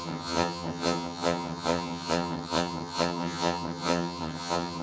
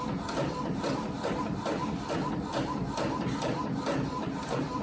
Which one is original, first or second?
second